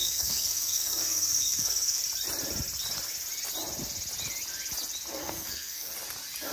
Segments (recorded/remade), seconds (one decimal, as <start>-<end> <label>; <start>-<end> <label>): 0.0-2.0 remade; 2.0-5.1 recorded; 5.1-5.9 remade; 5.9-6.5 recorded